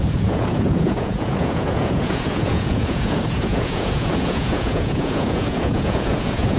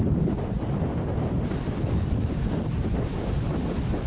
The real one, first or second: second